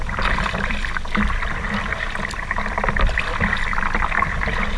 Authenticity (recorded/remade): remade